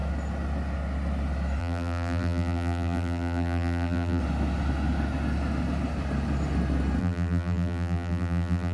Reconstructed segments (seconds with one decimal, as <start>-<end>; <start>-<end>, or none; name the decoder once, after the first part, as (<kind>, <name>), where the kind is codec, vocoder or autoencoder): 1.6-4.2 (vocoder, BigVGAN v2); 7.0-8.7